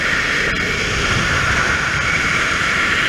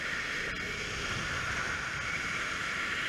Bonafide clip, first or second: second